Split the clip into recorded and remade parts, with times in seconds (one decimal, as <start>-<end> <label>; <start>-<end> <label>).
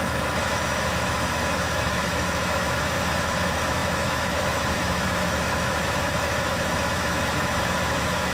0.0-8.3 remade